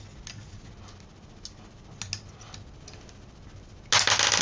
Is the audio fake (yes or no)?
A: no